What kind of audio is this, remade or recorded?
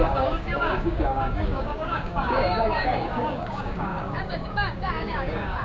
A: remade